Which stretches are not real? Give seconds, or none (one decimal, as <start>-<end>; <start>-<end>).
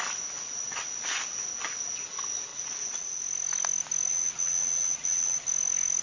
2.5-3.2; 4.1-5.5